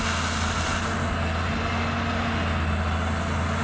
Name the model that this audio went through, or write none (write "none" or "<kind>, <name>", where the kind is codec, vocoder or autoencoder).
none